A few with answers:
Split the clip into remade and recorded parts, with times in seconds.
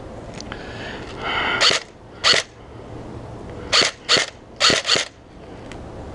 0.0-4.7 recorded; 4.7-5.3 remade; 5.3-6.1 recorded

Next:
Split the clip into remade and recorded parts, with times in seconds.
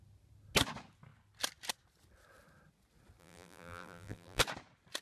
0.0-3.2 recorded; 3.2-4.4 remade; 4.4-5.0 recorded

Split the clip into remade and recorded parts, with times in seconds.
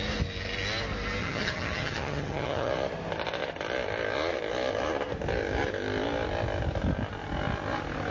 0.0-1.2 recorded; 1.2-2.7 remade; 2.7-8.1 recorded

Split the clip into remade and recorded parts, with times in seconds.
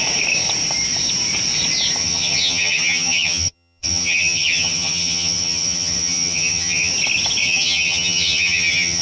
0.0-2.0 recorded; 2.0-6.9 remade; 6.9-7.4 recorded; 7.4-9.0 remade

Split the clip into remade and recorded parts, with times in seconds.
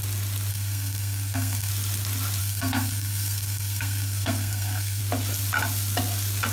0.0-0.5 recorded; 0.5-1.7 remade; 1.7-2.4 recorded; 2.4-5.0 remade; 5.0-6.5 recorded